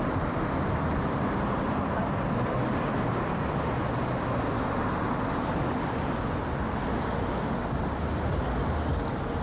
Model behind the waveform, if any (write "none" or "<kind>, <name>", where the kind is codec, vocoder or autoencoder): none